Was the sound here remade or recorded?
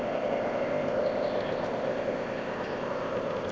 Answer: remade